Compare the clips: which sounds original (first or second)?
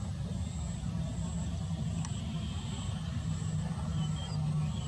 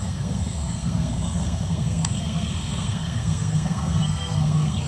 first